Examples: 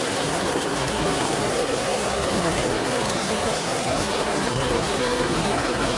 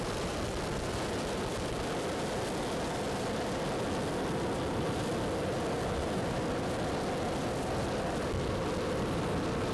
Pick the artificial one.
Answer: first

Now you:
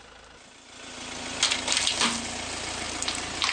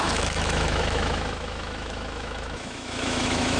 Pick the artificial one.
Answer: second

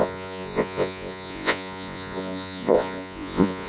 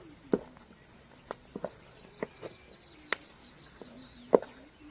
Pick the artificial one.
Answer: first